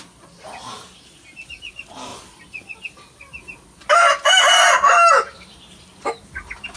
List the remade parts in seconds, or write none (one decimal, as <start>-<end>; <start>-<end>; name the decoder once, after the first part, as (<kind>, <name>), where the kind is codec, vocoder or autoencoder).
none